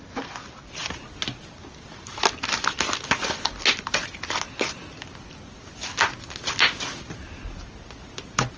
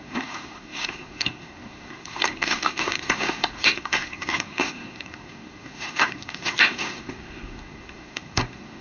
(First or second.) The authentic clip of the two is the first